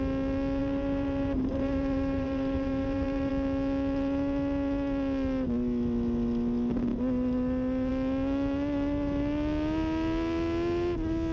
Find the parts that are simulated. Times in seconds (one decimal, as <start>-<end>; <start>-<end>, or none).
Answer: 0.6-3.3